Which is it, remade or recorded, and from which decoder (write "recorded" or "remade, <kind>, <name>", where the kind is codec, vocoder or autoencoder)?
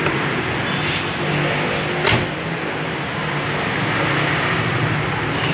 recorded